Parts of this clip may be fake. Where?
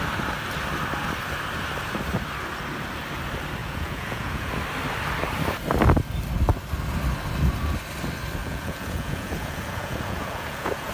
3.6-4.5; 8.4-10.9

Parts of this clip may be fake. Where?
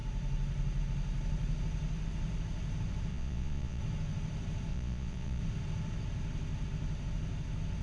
3.1-3.8; 4.7-5.4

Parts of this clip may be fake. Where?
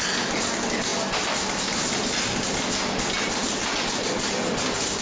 none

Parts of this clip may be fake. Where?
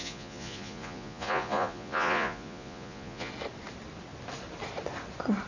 0.0-3.3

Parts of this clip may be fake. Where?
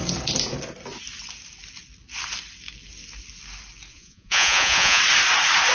3.9-5.0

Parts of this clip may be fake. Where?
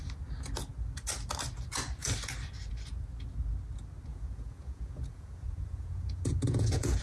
4.1-7.0